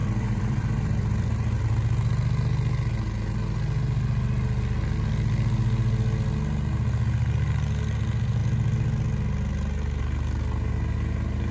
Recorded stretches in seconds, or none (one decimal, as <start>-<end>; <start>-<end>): 1.6-11.5